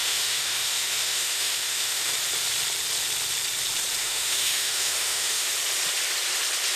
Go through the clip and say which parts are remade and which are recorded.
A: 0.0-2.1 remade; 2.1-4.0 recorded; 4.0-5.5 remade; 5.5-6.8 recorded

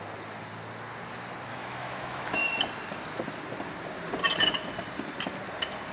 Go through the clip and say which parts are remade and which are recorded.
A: 0.0-1.5 recorded; 1.5-2.4 remade; 2.4-5.9 recorded